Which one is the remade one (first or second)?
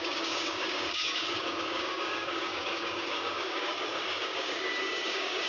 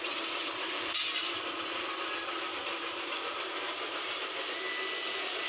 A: first